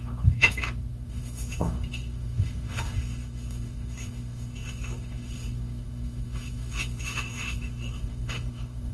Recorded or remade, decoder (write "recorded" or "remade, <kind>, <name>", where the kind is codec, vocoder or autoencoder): remade, autoencoder, DAC-VAE